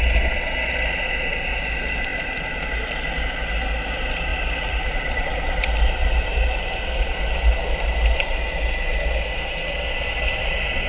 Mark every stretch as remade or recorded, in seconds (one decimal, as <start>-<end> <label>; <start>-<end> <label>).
0.0-4.3 recorded; 4.3-7.2 remade; 7.2-10.9 recorded